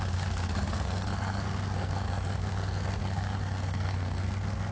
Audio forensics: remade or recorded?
remade